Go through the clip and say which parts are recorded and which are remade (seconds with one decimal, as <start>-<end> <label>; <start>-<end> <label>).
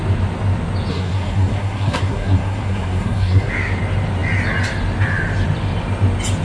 0.0-0.9 recorded; 0.9-3.5 remade; 3.5-6.4 recorded